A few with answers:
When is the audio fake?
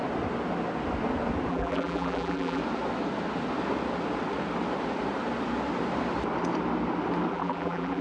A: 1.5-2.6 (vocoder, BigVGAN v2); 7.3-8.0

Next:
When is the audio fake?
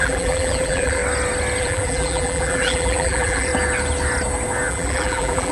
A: 0.0-1.0 (vocoder, BigVGAN v2); 1.6-3.5; 4.7-5.5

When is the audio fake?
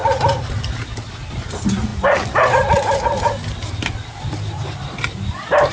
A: none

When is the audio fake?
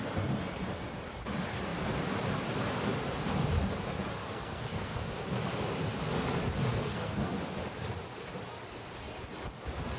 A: 4.2-5.1 (codec, SNAC); 6.7-7.4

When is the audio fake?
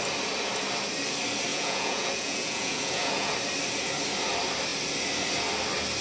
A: 1.5-3.3 (vocoder, Vocos)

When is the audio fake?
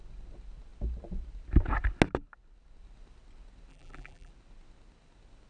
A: 3.7-4.3 (vocoder, BigVGAN v2)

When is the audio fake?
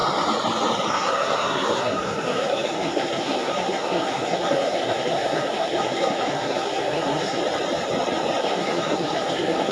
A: 0.9-7.4 (codec, SNAC); 8.4-9.7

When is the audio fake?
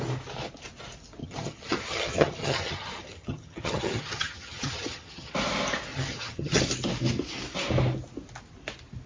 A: 1.2-5.3 (vocoder, HiFi-GAN); 5.9-6.6